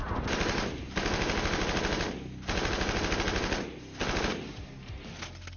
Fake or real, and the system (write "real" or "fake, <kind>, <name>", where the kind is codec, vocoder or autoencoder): real